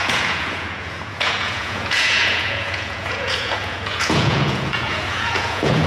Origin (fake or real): fake